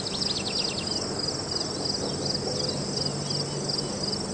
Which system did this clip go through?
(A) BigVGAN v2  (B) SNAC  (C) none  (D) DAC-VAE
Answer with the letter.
C